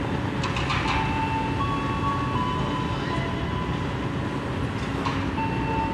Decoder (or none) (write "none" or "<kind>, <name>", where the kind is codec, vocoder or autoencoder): none